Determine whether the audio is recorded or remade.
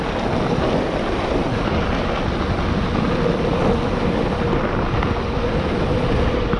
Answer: recorded